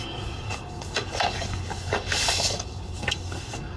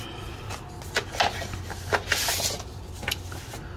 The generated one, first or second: first